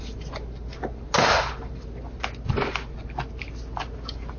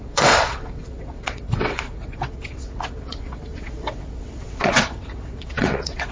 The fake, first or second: second